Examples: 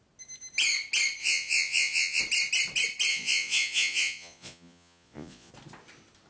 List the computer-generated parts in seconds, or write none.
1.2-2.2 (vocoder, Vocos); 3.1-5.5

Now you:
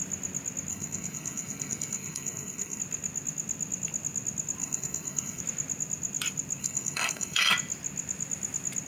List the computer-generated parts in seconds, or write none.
0.7-2.8 (codec, SNAC); 4.6-5.4; 6.6-7.5

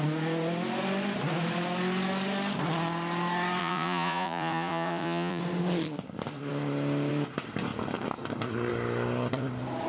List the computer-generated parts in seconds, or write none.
3.6-5.4 (vocoder, Vocos)